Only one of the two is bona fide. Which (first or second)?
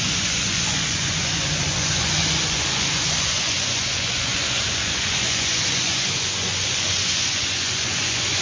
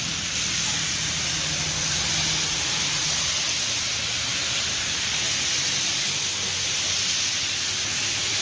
second